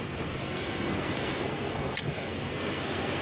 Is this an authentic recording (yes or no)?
no